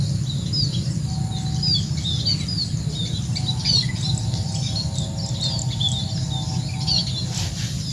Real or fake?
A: real